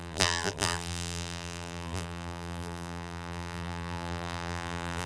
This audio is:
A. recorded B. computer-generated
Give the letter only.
B